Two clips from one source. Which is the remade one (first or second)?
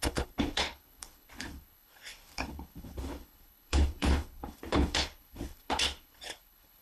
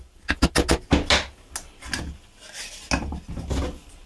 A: first